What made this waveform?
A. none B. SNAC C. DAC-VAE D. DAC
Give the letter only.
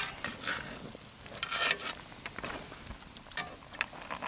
A